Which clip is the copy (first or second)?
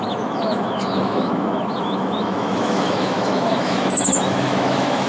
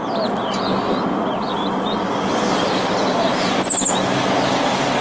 first